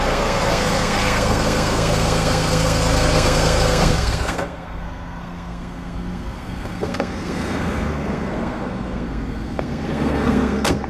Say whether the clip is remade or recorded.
remade